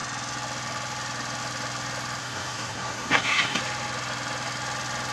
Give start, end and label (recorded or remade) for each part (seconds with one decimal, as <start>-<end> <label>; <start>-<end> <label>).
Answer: 0.0-2.2 recorded; 2.2-3.6 remade; 3.6-5.1 recorded